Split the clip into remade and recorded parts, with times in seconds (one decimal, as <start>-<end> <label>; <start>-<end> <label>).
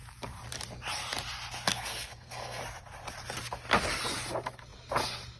0.0-1.7 recorded; 1.7-2.6 remade; 2.6-5.4 recorded